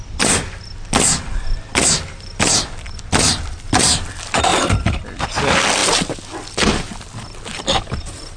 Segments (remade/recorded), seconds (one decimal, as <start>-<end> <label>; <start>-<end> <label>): 0.0-8.4 recorded